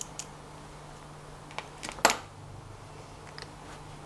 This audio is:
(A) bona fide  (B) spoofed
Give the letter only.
A